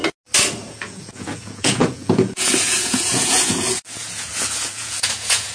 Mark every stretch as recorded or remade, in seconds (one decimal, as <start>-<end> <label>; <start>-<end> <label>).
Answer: 0.0-0.7 recorded; 0.7-5.5 remade